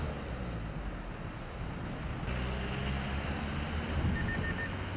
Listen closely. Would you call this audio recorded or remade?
recorded